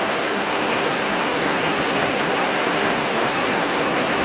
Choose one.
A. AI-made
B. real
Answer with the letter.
A